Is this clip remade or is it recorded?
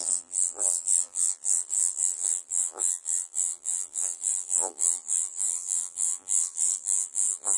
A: remade